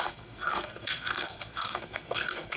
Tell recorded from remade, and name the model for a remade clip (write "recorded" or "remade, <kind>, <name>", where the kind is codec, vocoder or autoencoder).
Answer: remade, codec, SNAC